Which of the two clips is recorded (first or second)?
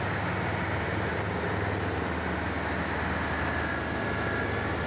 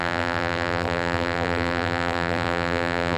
first